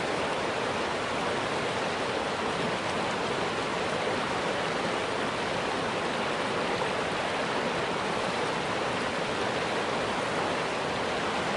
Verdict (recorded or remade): recorded